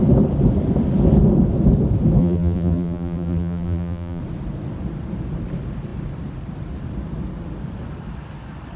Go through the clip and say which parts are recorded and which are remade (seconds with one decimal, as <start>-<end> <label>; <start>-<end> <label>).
0.0-2.2 recorded; 2.2-4.2 remade; 4.2-8.8 recorded